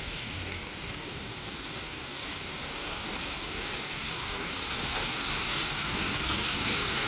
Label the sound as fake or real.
fake